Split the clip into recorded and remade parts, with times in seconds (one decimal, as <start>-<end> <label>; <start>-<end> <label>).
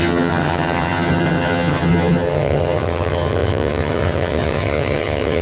0.0-5.4 remade